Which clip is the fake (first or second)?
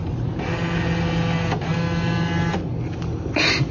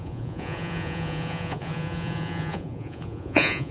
second